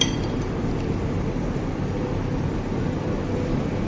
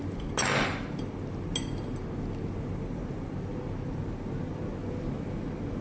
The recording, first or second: second